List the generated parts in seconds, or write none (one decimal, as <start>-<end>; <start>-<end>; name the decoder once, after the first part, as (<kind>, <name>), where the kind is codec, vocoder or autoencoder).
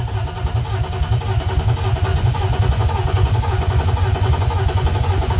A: 2.1-5.4 (vocoder, Vocos)